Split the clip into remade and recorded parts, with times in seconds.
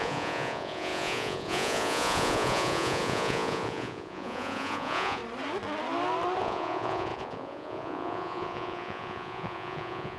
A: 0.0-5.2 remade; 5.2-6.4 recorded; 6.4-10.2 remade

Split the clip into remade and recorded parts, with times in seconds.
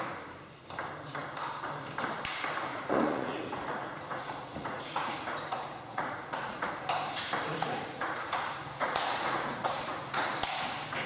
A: 0.0-2.7 recorded; 2.7-6.7 remade; 6.7-7.5 recorded; 7.5-10.3 remade; 10.3-11.1 recorded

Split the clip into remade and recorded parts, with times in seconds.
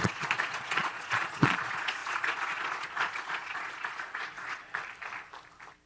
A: 0.0-4.6 remade; 4.6-5.9 recorded